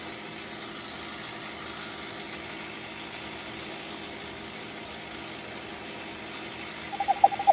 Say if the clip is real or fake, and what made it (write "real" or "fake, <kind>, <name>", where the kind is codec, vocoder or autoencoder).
real